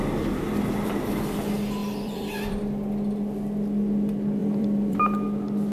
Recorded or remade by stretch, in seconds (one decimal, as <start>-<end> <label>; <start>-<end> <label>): 0.0-1.8 recorded; 1.8-2.6 remade; 2.6-4.4 recorded; 4.4-5.0 remade; 5.0-5.7 recorded